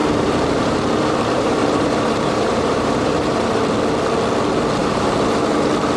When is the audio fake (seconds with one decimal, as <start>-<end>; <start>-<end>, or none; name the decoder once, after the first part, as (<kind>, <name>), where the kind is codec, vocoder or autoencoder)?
0.0-3.6 (vocoder, BigVGAN v2); 4.8-6.0